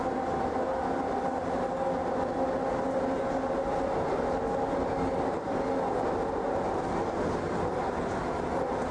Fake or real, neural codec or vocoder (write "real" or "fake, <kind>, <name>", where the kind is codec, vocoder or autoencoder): real